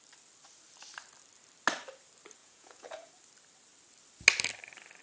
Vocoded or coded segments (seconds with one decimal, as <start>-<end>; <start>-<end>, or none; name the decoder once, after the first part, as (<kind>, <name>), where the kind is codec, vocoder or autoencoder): 2.4-3.1 (vocoder, Vocos)